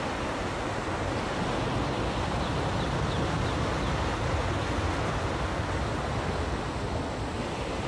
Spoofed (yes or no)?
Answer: no